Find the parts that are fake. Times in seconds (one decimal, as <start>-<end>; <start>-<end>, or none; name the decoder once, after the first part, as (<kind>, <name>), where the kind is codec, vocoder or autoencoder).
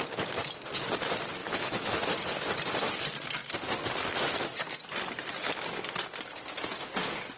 1.4-2.0 (autoencoder, DAC-VAE)